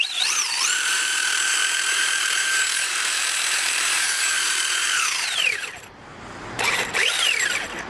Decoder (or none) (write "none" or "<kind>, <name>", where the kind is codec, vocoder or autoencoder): vocoder, BigVGAN v2